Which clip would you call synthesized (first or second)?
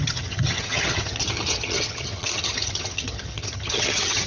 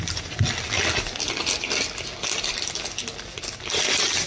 first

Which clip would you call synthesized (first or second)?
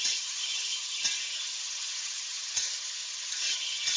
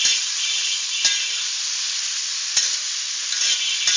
first